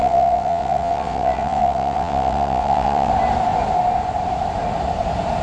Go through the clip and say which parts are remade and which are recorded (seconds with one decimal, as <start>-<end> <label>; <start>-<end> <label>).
0.0-3.1 remade; 3.1-5.4 recorded